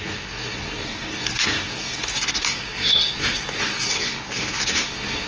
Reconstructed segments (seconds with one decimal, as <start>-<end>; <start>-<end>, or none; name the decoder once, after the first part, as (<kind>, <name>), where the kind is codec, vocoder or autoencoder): 0.0-5.3 (codec, SNAC)